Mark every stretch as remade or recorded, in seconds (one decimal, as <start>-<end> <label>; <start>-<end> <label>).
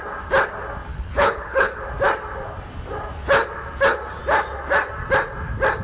0.0-0.9 recorded; 0.9-1.8 remade; 1.8-5.8 recorded